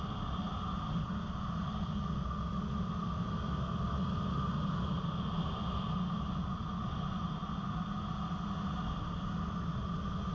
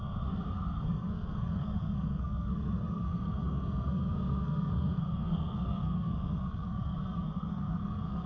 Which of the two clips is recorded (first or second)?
first